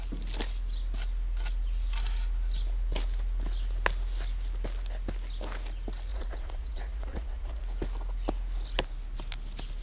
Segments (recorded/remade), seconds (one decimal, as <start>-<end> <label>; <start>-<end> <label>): 0.0-6.1 recorded; 6.1-7.6 remade; 7.6-9.8 recorded